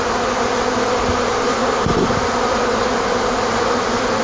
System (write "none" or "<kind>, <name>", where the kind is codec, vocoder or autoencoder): none